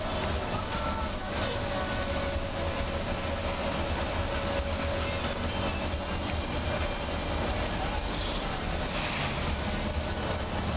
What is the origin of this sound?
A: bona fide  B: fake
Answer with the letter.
A